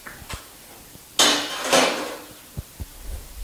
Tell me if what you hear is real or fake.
real